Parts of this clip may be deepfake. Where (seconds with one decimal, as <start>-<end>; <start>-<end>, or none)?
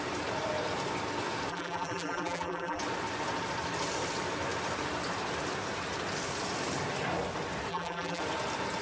1.5-2.8; 7.7-8.2